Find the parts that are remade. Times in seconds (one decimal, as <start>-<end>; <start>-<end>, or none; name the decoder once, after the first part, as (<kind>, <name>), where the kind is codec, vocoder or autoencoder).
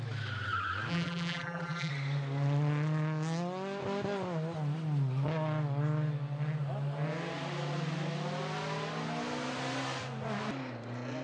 0.9-1.9 (vocoder, BigVGAN v2)